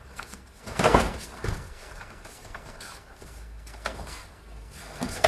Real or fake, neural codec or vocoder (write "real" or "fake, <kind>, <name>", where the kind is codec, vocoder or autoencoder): fake, codec, SNAC